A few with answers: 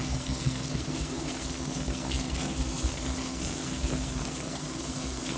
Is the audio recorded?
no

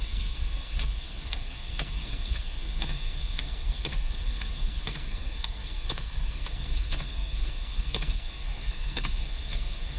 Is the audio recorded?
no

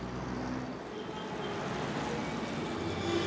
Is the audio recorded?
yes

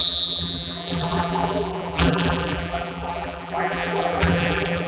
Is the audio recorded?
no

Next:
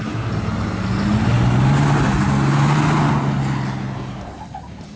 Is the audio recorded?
yes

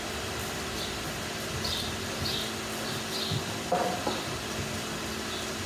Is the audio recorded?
yes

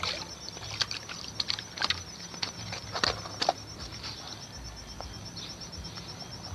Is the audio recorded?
yes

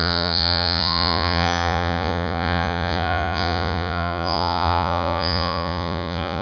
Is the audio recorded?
no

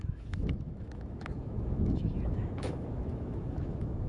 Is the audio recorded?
no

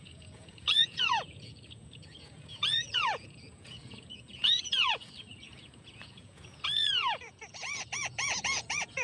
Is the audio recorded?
no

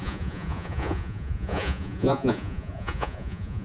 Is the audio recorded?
no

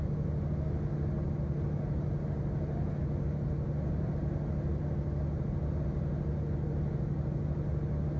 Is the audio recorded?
yes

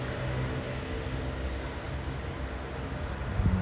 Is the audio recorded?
yes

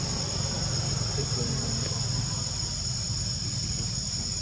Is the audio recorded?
yes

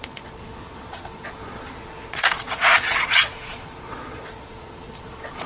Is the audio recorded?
no